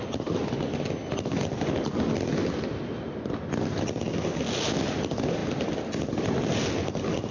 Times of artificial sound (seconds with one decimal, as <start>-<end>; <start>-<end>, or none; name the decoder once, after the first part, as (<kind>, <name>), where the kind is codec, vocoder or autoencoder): none